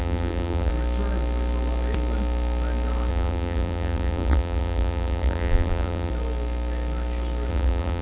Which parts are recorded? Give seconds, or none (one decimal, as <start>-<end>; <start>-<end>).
0.7-3.1; 6.1-7.5